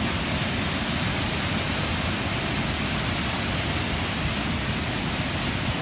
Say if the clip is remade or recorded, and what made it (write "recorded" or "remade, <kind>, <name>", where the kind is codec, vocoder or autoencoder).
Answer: recorded